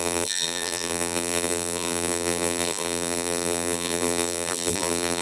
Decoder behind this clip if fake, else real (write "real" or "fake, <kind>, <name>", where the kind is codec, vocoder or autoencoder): fake, vocoder, BigVGAN v2